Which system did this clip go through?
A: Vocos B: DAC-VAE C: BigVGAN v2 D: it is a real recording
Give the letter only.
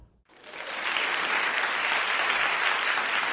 D